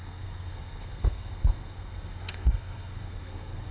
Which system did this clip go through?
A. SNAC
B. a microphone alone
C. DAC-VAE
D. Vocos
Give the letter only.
A